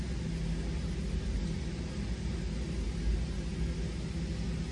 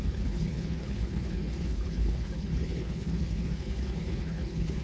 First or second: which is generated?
second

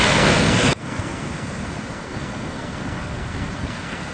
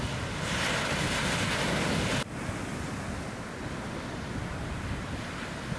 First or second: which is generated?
first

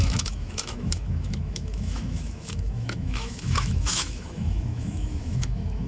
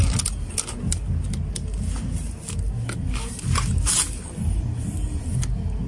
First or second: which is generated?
first